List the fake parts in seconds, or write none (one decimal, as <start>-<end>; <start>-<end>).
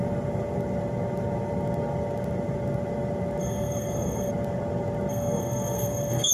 3.4-4.3; 5.1-6.3